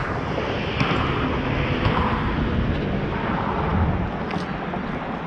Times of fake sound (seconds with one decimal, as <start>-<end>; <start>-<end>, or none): none